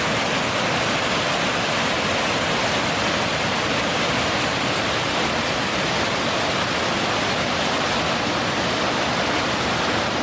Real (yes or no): yes